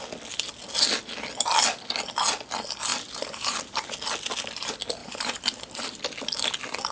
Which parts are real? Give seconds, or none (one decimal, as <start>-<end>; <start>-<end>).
0.0-2.9; 3.9-5.0; 6.0-6.9